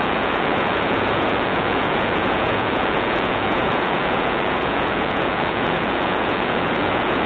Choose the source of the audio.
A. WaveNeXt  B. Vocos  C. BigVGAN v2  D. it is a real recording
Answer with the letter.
B